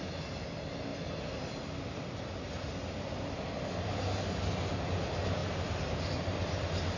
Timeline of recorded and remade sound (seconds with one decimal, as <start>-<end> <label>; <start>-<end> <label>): 0.0-7.0 recorded